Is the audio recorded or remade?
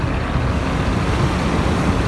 recorded